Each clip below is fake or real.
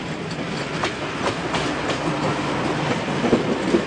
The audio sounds real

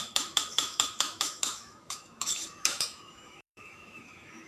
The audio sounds fake